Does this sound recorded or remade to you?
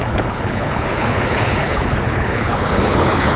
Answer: remade